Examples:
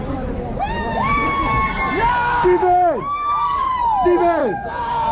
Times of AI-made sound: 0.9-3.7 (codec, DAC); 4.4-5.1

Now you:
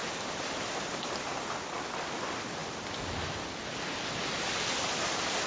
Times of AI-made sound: none

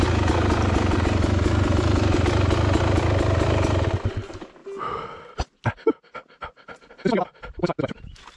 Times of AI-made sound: none

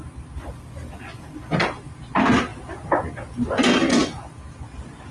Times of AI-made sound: none

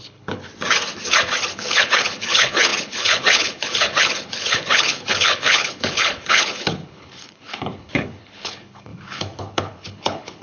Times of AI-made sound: 0.0-0.5 (codec, HILCodec); 1.5-10.4

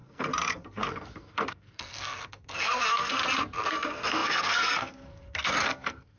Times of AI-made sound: 0.0-3.2 (codec, SNAC); 3.7-6.2

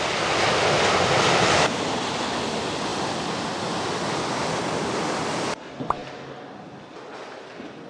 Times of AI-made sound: none